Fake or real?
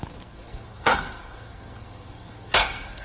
fake